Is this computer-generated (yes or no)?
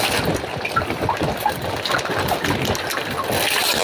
no